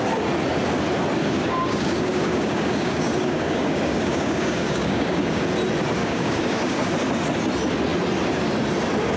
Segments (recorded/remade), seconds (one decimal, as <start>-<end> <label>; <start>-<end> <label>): 0.0-1.2 recorded; 1.2-5.4 remade; 5.4-6.0 recorded; 6.0-6.9 remade; 6.9-9.2 recorded